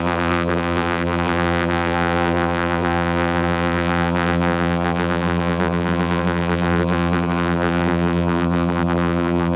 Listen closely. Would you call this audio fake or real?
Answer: fake